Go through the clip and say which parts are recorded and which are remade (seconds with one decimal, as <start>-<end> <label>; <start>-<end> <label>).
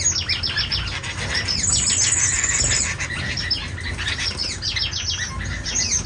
0.0-6.1 recorded